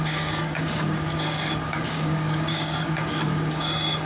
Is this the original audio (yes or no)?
no